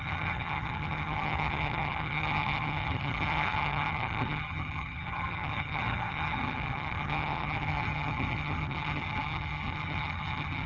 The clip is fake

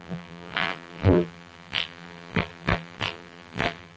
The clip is fake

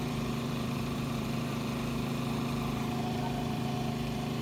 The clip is fake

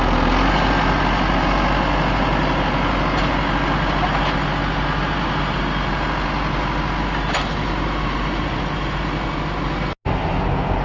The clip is real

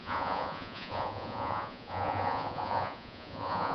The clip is fake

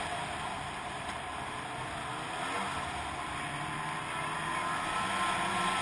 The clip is real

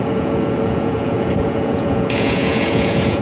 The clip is fake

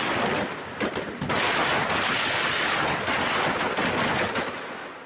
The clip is real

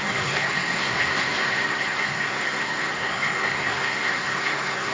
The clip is fake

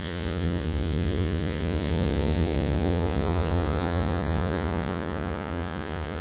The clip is fake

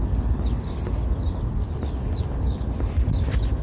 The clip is real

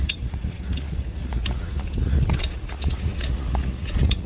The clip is fake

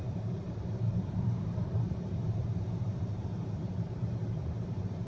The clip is fake